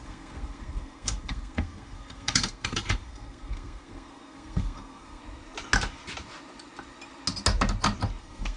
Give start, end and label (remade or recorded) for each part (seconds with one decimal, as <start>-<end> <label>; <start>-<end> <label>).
0.0-5.2 remade; 5.2-8.2 recorded; 8.2-8.6 remade